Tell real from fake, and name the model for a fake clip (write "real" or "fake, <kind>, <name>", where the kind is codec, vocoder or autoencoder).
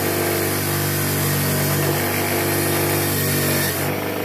real